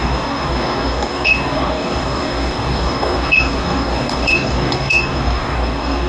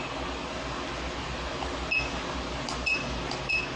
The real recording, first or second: second